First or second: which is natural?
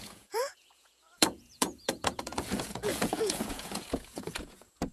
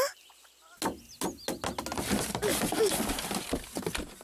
second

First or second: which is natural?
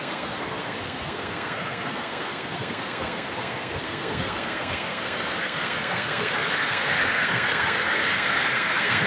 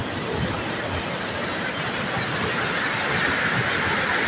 second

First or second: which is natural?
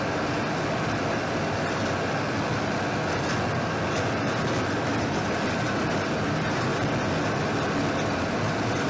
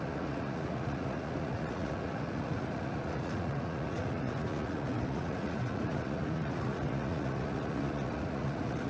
first